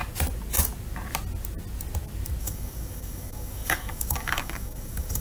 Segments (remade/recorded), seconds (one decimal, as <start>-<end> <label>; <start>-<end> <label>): 0.0-2.4 recorded; 2.4-5.2 remade